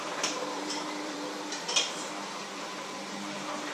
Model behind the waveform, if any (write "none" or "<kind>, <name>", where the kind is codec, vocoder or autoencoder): vocoder, BigVGAN v2